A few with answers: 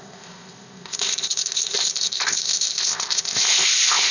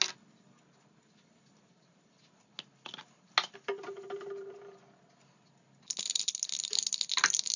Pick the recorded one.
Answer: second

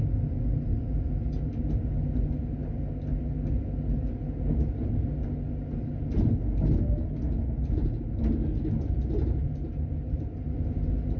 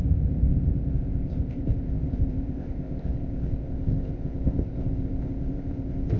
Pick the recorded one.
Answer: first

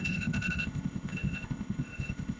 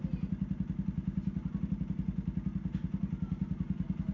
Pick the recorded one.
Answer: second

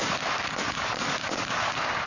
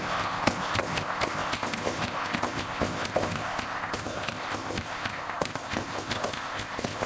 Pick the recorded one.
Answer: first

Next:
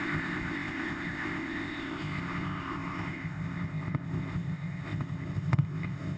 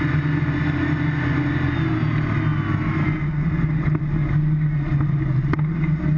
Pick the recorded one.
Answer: second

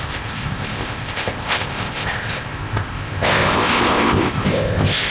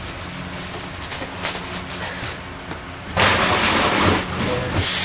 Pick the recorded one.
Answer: second